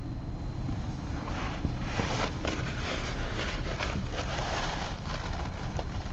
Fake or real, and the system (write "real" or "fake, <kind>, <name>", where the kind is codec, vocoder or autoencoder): fake, vocoder, BigVGAN v2